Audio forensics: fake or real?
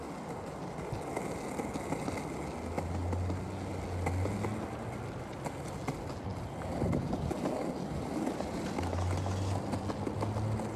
real